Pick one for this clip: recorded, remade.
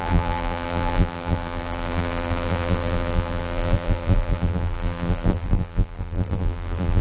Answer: remade